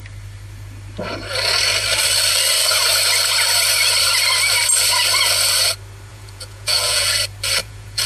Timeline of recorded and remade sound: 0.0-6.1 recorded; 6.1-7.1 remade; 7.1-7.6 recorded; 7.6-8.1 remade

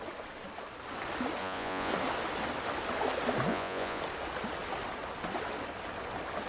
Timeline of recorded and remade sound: 0.0-1.4 recorded; 1.4-1.9 remade; 1.9-3.5 recorded; 3.5-4.0 remade; 4.0-6.5 recorded

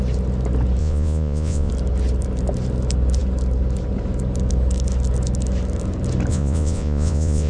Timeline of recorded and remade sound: 0.0-0.8 recorded; 0.8-1.7 remade; 1.7-6.3 recorded; 6.3-7.5 remade

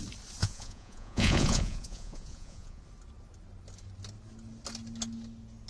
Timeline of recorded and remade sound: 0.0-0.4 recorded; 0.4-2.8 remade; 2.8-5.7 recorded

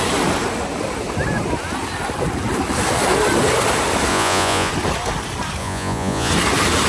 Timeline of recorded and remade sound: 0.0-4.1 recorded; 4.1-4.7 remade; 4.7-5.6 recorded; 5.6-6.3 remade; 6.3-6.9 recorded

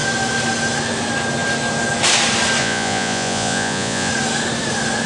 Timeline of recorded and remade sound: 0.0-2.6 recorded; 2.6-4.1 remade; 4.1-5.1 recorded

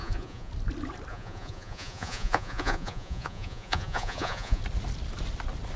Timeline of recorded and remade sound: 0.0-0.5 remade; 0.5-1.1 recorded; 1.1-4.6 remade; 4.6-5.8 recorded

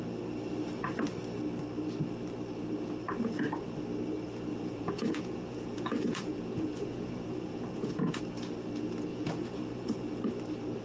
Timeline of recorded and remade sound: 0.0-4.5 recorded; 4.5-8.2 remade; 8.2-9.1 recorded; 9.1-10.2 remade; 10.2-10.8 recorded